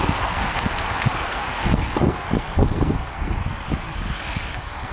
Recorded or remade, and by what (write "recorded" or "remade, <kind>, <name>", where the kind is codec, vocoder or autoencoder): remade, codec, SNAC